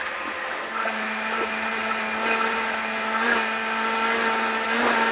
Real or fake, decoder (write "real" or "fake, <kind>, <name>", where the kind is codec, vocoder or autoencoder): real